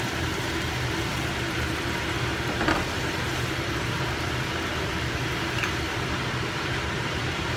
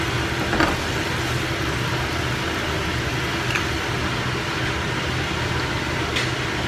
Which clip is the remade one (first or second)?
first